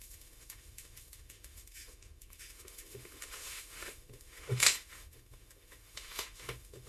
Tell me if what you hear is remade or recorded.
remade